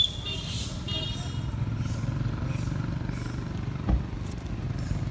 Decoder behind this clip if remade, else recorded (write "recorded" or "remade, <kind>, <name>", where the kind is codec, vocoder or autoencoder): recorded